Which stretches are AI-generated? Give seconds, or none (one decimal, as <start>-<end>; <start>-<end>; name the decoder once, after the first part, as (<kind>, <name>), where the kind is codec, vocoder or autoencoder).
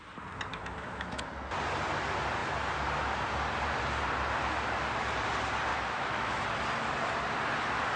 0.5-1.3 (autoencoder, DAC-VAE); 5.7-6.4